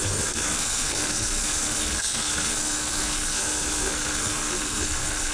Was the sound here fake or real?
fake